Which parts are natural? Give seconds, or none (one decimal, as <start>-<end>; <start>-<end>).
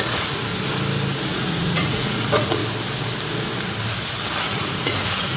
0.5-1.3; 2.6-4.4